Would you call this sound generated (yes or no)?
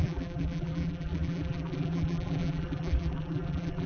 yes